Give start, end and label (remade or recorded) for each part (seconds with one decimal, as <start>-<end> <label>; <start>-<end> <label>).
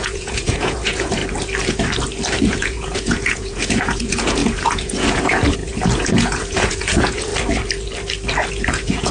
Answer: 0.0-1.2 remade; 1.2-2.4 recorded; 2.4-7.3 remade; 7.3-8.7 recorded; 8.7-9.1 remade